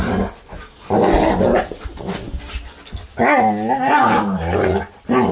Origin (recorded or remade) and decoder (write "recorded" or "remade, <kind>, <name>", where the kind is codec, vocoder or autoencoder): recorded